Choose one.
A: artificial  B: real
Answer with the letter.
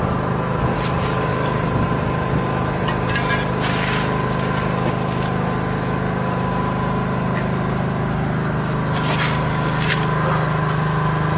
B